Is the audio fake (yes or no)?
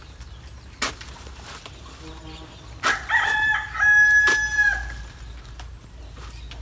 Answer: no